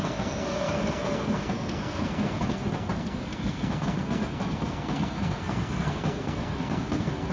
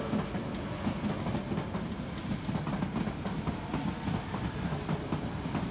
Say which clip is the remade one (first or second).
first